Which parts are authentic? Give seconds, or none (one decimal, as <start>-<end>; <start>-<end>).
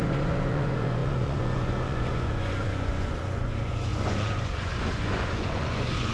none